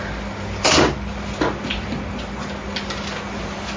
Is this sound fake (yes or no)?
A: no